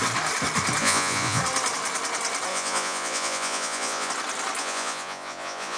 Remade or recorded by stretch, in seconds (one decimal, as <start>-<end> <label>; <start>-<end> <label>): 0.0-0.8 recorded; 0.8-1.4 remade; 1.4-2.5 recorded; 2.5-4.1 remade; 4.1-4.6 recorded; 4.6-5.8 remade